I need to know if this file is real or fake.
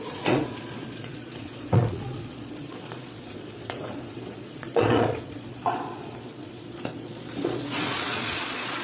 fake